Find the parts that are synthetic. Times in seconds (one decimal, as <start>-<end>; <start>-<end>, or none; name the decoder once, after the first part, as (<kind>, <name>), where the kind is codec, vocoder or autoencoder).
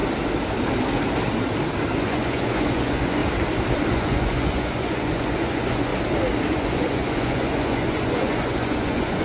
2.0-3.2 (vocoder, Vocos); 3.9-5.9; 6.5-9.2